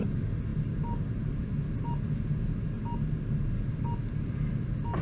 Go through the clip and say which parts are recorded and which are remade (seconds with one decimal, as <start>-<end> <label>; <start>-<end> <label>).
0.0-5.0 recorded